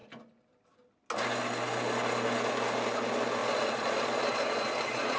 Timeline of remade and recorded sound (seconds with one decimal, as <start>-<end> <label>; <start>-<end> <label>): 0.0-3.4 recorded; 3.4-5.2 remade